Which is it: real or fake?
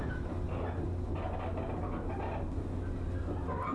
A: real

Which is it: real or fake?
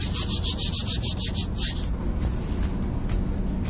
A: real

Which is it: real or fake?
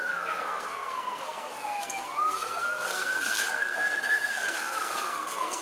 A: fake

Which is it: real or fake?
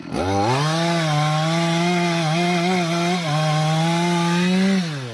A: real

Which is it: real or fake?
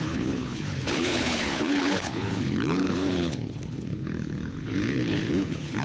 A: fake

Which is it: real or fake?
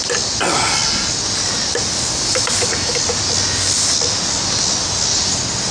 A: real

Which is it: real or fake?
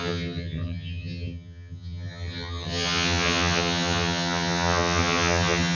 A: fake